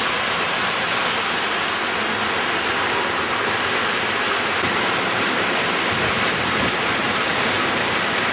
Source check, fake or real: real